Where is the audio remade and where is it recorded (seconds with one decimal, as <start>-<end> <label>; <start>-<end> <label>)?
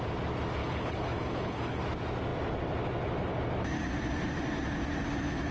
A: 0.0-0.6 recorded; 0.6-1.8 remade; 1.8-5.5 recorded